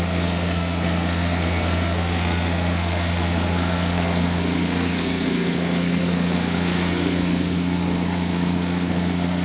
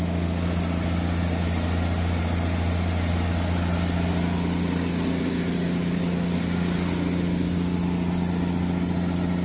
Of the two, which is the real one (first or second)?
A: second